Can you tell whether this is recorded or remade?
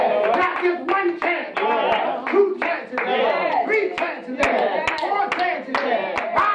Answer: recorded